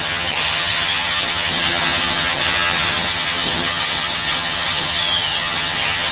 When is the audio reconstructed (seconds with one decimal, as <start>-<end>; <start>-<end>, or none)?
0.0-6.1